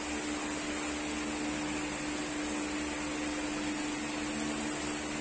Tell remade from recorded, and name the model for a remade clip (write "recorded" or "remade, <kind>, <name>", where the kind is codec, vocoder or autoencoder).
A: recorded